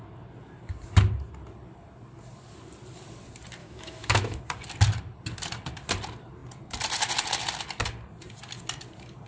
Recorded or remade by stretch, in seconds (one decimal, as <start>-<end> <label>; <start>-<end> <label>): 0.0-3.6 recorded; 3.6-4.4 remade; 4.4-9.3 recorded